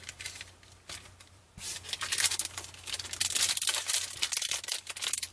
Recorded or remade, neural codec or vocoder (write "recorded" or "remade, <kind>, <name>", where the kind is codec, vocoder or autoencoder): remade, vocoder, BigVGAN v2